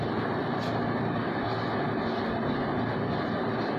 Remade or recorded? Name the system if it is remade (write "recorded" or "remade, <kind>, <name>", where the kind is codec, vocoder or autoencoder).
recorded